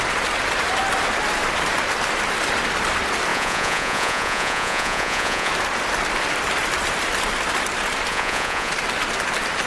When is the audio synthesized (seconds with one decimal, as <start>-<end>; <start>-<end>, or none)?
3.3-5.5; 8.1-8.7